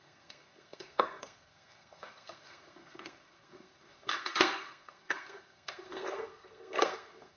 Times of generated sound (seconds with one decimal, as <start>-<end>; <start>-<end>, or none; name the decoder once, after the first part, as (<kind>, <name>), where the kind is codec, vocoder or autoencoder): 0.0-7.4 (codec, SNAC)